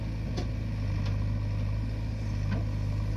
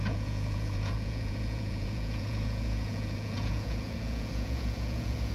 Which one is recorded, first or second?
first